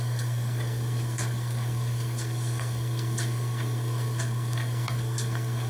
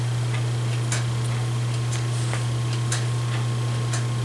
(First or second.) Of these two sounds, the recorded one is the second